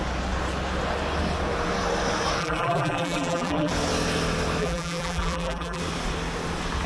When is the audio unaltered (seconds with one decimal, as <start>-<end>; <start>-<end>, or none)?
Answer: 0.0-2.4; 3.7-4.6; 5.8-6.9